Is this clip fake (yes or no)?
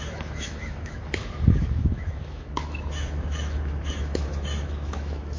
yes